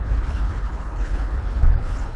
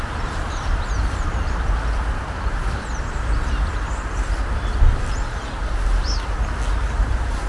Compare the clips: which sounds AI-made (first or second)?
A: first